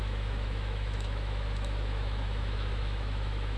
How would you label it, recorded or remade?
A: remade